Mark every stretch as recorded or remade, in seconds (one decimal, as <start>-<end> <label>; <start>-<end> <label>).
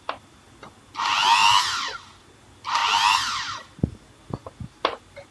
0.0-5.3 recorded